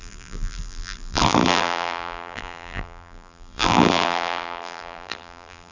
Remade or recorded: remade